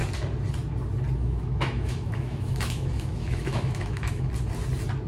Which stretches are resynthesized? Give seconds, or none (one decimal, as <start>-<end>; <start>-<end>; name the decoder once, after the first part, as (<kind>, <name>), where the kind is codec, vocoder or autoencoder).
1.2-4.3 (autoencoder, DAC-VAE)